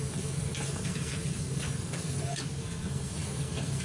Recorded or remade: remade